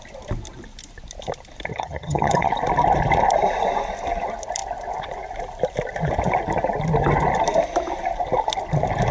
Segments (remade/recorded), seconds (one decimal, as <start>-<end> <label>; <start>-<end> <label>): 0.0-1.7 recorded; 1.7-2.5 remade; 2.5-9.1 recorded